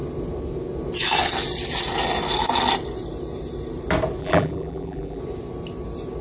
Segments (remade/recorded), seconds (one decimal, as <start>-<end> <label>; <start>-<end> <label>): 0.0-4.2 recorded; 4.2-5.2 remade; 5.2-6.2 recorded